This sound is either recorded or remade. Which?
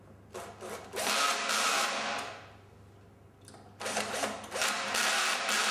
recorded